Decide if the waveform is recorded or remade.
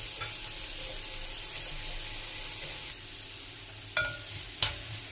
recorded